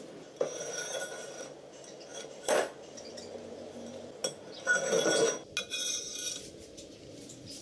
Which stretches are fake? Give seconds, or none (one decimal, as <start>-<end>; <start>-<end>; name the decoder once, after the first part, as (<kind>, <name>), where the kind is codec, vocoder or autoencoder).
none